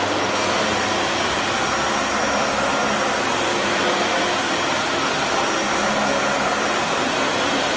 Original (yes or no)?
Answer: yes